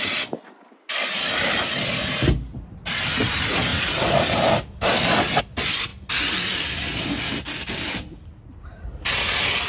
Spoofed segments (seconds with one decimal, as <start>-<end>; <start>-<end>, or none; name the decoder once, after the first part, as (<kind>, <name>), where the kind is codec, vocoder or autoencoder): none